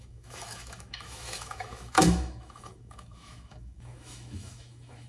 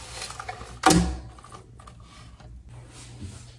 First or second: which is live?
second